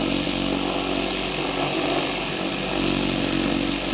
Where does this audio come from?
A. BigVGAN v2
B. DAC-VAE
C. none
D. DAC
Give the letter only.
C